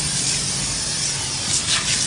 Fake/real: real